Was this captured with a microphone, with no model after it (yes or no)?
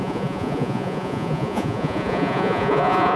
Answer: no